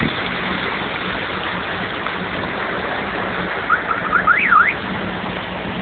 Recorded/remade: recorded